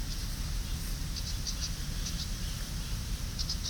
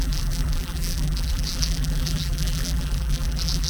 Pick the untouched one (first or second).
first